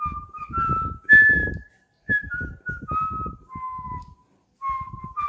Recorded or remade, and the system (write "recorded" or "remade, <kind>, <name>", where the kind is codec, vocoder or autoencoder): recorded